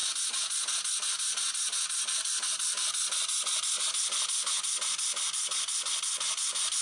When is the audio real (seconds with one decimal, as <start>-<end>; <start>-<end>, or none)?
0.0-6.8